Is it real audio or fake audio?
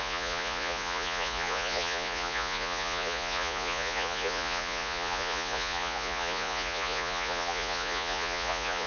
fake